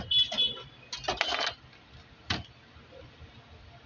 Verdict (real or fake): real